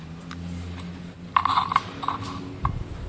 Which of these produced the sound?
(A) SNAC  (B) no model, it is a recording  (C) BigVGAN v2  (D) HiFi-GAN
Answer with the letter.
B